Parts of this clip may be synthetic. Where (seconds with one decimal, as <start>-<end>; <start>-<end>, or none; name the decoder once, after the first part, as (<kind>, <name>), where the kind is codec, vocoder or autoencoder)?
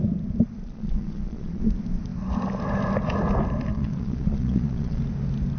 0.6-1.6 (vocoder, Vocos); 3.7-5.0